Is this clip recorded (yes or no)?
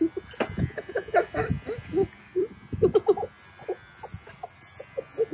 yes